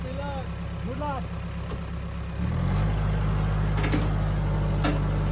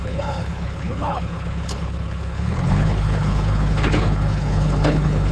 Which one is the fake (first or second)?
second